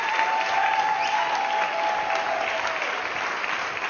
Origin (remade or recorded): recorded